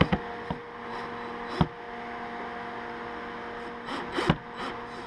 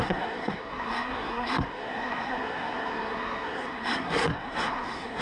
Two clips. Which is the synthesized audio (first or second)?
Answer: second